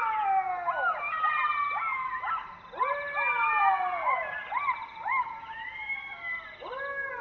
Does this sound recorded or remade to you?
recorded